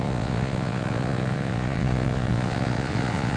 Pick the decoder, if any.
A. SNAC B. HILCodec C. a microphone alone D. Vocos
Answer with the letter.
D